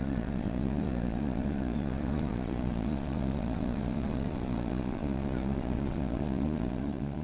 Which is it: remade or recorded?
remade